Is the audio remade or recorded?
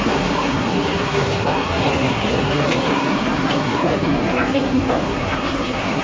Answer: remade